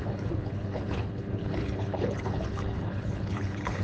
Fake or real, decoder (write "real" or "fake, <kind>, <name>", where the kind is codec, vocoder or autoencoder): fake, codec, HILCodec